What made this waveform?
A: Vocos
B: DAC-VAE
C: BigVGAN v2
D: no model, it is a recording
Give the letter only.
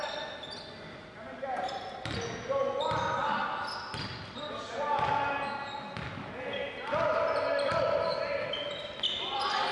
D